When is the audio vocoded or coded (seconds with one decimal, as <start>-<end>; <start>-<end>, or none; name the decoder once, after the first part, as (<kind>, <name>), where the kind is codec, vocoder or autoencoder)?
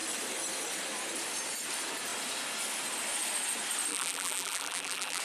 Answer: 3.9-5.2 (vocoder, BigVGAN v2)